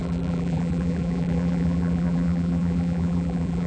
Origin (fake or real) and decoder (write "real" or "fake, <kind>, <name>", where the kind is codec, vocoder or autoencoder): fake, vocoder, BigVGAN v2